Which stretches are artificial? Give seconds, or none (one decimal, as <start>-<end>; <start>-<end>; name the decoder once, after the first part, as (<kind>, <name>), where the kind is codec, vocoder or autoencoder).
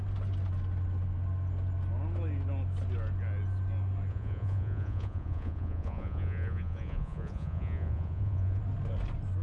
4.1-8.6 (vocoder, Vocos)